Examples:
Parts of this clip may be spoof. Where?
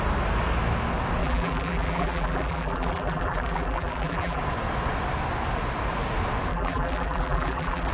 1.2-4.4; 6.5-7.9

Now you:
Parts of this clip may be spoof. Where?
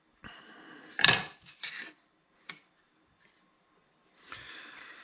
0.0-5.0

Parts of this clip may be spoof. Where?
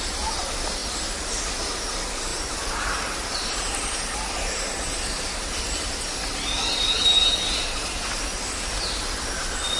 2.3-6.6